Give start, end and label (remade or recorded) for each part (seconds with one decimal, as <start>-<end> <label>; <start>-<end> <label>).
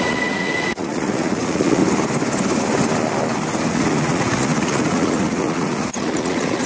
0.0-1.8 remade; 1.8-3.7 recorded; 3.7-6.7 remade